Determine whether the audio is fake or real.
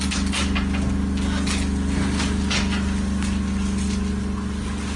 real